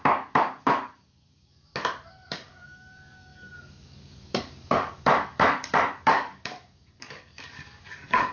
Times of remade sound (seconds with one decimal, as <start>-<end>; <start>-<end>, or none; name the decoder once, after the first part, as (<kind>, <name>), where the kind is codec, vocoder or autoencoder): 0.0-1.7 (codec, DAC); 2.3-8.3